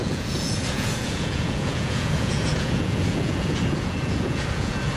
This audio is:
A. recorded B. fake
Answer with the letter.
B